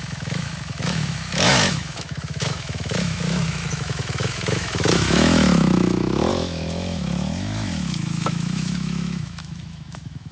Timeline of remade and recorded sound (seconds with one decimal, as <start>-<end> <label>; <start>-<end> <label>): 0.0-10.3 remade